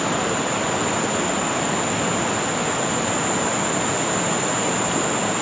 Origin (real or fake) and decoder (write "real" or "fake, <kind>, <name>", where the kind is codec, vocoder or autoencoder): real